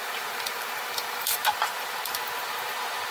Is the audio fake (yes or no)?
yes